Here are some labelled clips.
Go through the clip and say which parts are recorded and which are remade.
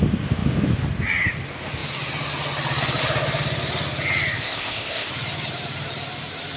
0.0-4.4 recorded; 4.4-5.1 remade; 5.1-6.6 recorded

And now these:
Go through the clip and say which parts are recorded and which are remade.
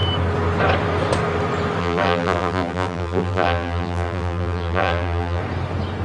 0.0-1.8 recorded; 1.8-5.4 remade; 5.4-6.0 recorded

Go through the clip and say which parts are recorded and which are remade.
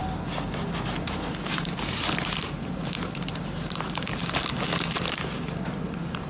0.0-1.3 recorded; 1.3-6.3 remade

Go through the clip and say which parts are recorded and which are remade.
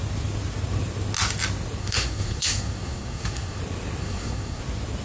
0.0-1.8 recorded; 1.8-3.6 remade; 3.6-4.0 recorded; 4.0-4.6 remade; 4.6-5.0 recorded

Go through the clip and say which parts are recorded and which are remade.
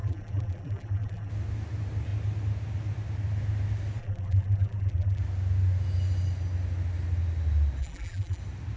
0.0-1.3 remade; 1.3-4.0 recorded; 4.0-5.2 remade; 5.2-7.8 recorded; 7.8-8.4 remade; 8.4-8.8 recorded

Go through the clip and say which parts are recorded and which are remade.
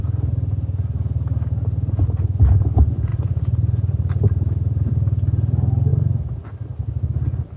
0.0-3.1 recorded; 3.1-4.9 remade; 4.9-7.6 recorded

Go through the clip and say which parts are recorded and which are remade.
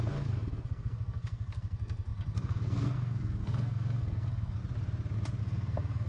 0.0-4.6 remade; 4.6-5.4 recorded; 5.4-6.1 remade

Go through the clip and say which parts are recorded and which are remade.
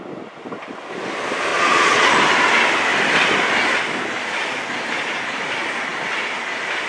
0.0-1.5 recorded; 1.5-2.1 remade; 2.1-6.9 recorded